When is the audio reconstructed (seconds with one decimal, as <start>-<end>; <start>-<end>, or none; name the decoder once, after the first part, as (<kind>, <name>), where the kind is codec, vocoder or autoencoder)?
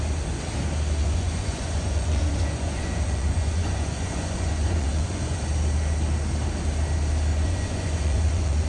1.0-5.4 (vocoder, Vocos); 7.3-8.7